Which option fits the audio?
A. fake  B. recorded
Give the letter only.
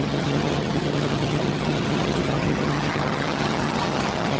A